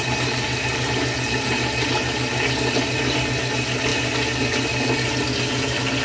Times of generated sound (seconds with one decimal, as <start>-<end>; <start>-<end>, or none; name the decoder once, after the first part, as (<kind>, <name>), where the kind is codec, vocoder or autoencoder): none